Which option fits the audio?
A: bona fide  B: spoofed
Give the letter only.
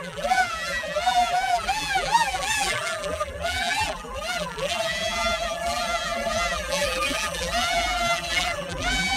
B